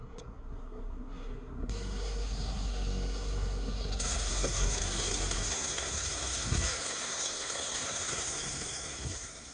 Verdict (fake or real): fake